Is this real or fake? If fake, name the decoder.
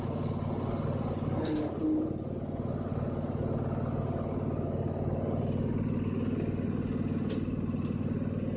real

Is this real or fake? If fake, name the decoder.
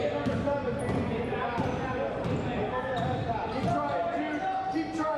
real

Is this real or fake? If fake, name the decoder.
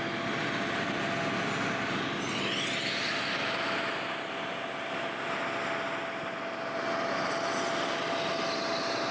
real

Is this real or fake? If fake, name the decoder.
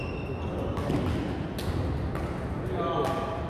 real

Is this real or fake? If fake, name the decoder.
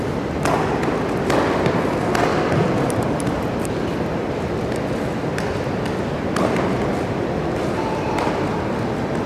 real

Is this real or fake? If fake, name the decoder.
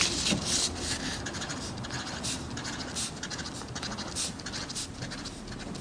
real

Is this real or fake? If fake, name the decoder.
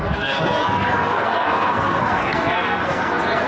fake, codec, SNAC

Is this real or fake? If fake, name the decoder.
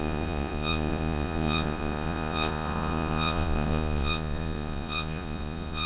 fake, vocoder, Vocos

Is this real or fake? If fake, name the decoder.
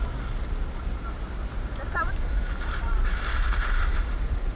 fake, vocoder, BigVGAN v2